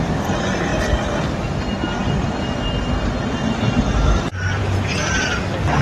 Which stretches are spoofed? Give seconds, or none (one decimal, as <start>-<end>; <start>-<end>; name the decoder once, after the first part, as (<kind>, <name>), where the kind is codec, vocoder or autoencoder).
none